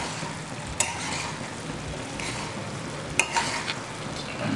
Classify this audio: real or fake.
real